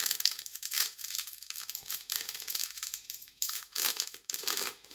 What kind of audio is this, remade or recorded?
remade